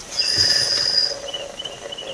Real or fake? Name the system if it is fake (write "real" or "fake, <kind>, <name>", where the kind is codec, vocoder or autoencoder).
real